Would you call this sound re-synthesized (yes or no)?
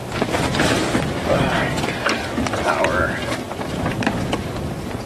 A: no